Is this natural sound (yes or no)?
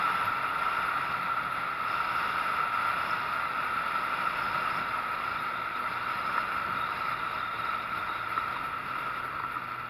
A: yes